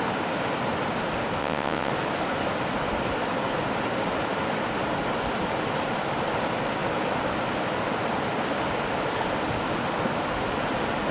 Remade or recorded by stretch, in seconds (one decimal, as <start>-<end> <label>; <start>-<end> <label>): 0.0-1.4 recorded; 1.4-1.9 remade; 1.9-11.1 recorded